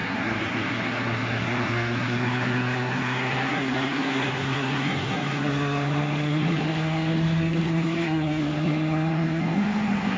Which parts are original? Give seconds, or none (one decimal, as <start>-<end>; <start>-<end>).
none